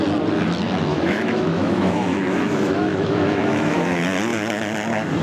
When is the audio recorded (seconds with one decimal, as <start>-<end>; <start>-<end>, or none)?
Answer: 0.0-0.9; 4.0-5.2